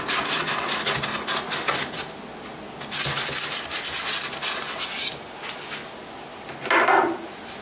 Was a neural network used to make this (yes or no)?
no